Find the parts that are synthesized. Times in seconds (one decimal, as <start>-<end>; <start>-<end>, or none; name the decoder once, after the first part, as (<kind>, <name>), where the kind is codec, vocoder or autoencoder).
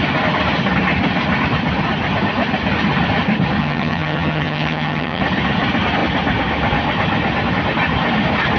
3.6-5.2 (vocoder, HiFi-GAN)